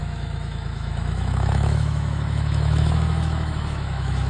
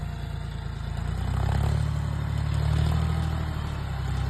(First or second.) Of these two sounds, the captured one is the second